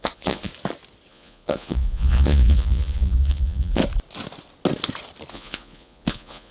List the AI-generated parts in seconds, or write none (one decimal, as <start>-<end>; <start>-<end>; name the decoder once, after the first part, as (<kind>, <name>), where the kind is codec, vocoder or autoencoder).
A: 0.0-0.5 (vocoder, Vocos); 1.1-3.8; 5.3-6.5